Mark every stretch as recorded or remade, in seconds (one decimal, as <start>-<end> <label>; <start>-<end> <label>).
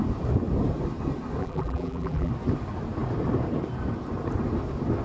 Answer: 0.0-1.4 recorded; 1.4-2.3 remade; 2.3-5.0 recorded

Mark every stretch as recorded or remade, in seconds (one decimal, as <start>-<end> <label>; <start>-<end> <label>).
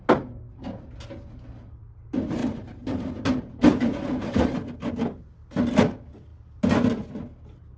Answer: 0.0-2.4 recorded; 2.4-4.9 remade; 4.9-7.8 recorded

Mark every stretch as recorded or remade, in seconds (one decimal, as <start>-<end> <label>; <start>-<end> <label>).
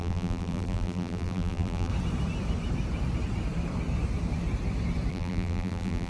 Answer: 0.0-1.9 remade; 1.9-5.1 recorded; 5.1-6.1 remade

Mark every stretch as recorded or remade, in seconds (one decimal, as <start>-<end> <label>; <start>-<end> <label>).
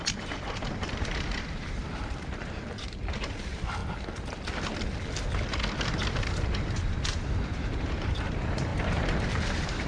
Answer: 0.0-3.8 remade; 3.8-6.1 recorded; 6.1-9.9 remade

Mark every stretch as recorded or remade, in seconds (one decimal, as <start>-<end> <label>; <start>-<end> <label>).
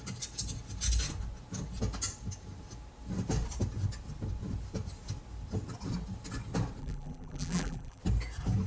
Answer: 0.0-6.8 recorded; 6.8-8.0 remade; 8.0-8.7 recorded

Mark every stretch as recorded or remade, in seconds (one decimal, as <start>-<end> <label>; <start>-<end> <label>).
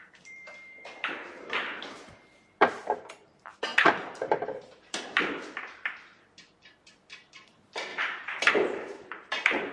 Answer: 0.0-9.7 remade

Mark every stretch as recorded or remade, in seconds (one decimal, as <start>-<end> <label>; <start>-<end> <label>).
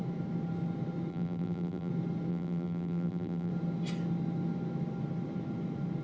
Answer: 0.0-1.1 recorded; 1.1-1.9 remade; 1.9-2.3 recorded; 2.3-3.5 remade; 3.5-6.0 recorded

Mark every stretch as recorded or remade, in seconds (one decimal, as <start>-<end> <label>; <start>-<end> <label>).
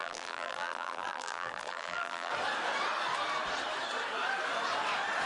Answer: 0.0-2.3 remade; 2.3-5.3 recorded